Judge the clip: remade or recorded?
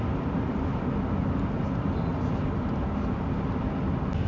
recorded